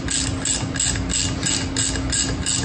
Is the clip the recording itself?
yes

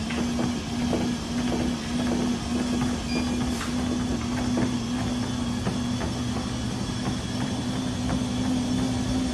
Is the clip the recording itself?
yes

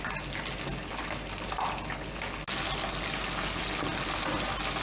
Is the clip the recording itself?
yes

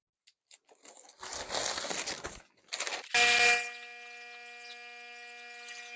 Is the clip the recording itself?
yes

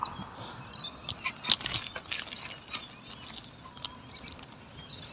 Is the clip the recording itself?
yes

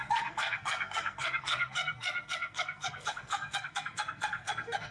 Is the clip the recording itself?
no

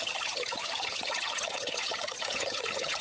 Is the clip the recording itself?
no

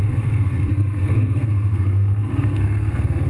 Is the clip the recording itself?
no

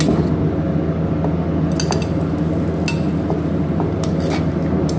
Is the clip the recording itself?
yes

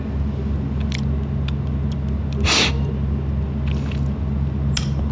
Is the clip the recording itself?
yes